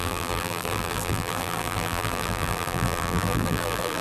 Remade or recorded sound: remade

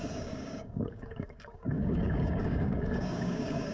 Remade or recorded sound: remade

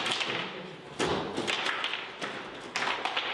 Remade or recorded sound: recorded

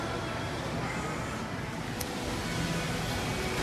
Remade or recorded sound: recorded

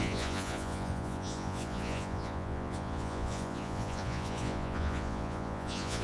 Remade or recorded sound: remade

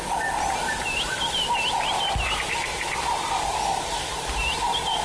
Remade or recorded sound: recorded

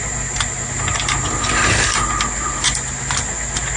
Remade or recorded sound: recorded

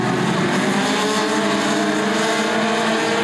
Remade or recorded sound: recorded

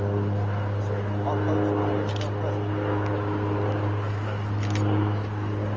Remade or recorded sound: recorded